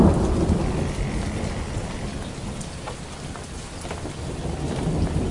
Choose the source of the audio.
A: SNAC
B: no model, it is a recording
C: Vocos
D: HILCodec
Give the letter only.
B